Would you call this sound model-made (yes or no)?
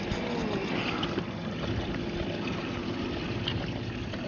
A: no